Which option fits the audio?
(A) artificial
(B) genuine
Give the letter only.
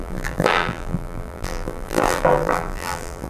A